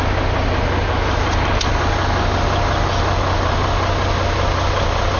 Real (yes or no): yes